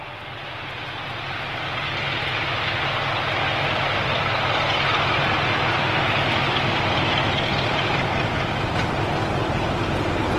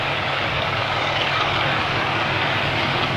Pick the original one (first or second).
first